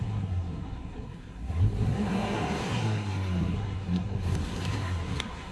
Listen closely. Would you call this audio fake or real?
fake